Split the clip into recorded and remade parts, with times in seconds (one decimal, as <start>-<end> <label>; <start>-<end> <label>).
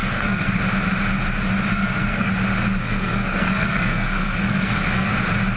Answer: 0.0-0.6 remade; 0.6-1.7 recorded; 1.7-2.3 remade; 2.3-2.8 recorded; 2.8-5.1 remade; 5.1-5.6 recorded